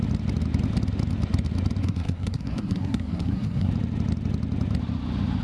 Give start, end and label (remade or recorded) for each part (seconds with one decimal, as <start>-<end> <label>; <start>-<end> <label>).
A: 0.0-1.8 recorded; 1.8-3.7 remade; 3.7-5.4 recorded